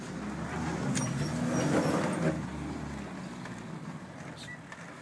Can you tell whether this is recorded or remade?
recorded